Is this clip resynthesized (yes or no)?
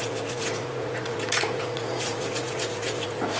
yes